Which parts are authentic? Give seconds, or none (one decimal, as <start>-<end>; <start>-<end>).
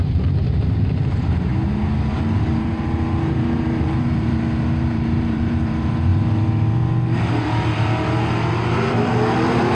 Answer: 1.5-2.1; 6.1-8.9